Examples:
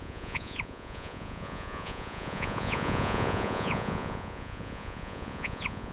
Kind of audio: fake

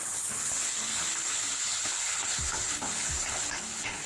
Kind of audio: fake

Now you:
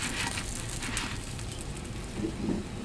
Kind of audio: real